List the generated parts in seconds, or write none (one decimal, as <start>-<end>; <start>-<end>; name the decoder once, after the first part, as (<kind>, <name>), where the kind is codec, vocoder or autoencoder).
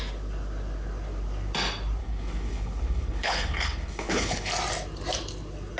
2.0-4.5 (codec, HILCodec)